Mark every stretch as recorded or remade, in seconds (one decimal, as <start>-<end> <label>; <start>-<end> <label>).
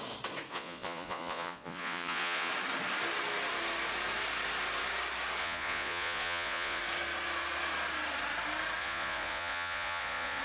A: 0.0-0.5 recorded; 0.5-2.5 remade; 2.5-5.4 recorded; 5.4-6.8 remade; 6.8-8.8 recorded; 8.8-10.4 remade